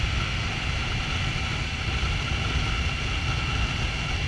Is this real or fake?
real